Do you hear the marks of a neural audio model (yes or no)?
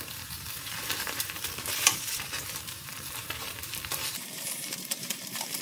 yes